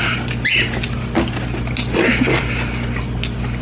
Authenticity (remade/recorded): recorded